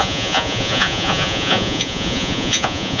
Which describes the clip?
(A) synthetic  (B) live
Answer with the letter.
A